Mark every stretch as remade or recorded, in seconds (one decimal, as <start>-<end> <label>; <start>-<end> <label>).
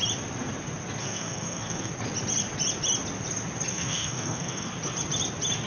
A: 0.0-1.0 recorded; 1.0-1.9 remade; 1.9-3.7 recorded; 3.7-4.7 remade; 4.7-5.7 recorded